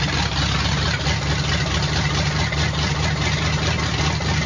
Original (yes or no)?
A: yes